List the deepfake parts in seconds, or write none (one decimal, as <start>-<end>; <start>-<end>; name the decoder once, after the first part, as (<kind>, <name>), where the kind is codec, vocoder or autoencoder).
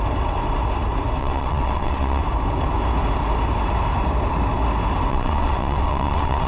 1.2-2.2 (vocoder, WaveNeXt); 5.1-6.5